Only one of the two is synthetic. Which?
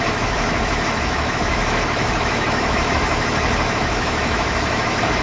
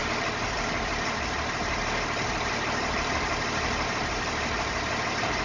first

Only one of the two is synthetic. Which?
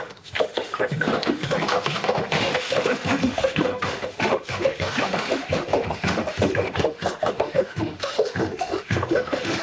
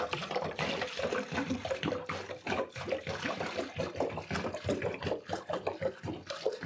first